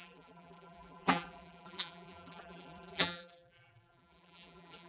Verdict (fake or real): fake